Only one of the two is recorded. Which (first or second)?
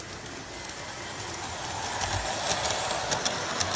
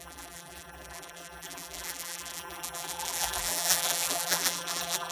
first